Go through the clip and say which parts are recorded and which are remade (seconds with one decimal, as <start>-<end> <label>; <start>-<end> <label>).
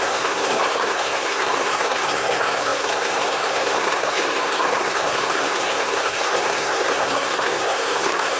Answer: 0.0-8.4 remade